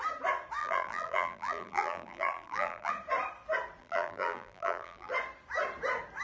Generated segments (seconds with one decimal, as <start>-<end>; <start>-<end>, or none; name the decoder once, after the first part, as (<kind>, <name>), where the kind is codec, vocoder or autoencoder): 0.6-2.9 (vocoder, BigVGAN v2); 3.8-5.1